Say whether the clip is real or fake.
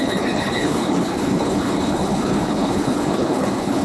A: fake